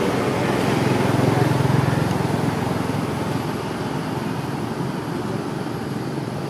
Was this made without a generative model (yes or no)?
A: yes